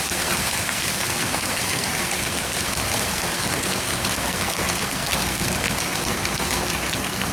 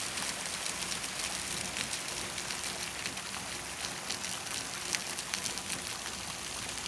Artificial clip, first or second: first